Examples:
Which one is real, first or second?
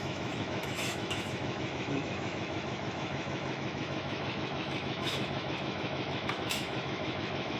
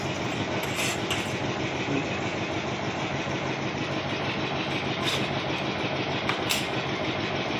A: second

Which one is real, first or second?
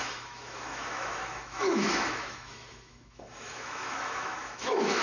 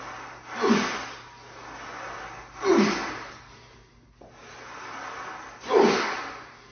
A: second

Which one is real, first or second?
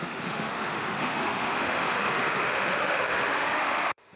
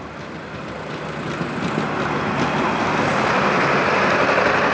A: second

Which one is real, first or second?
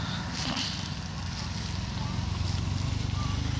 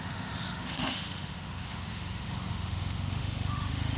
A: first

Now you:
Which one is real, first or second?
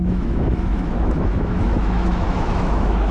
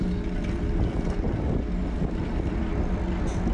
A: second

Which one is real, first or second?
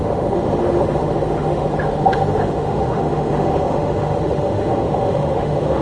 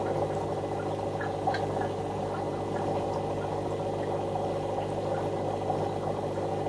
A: second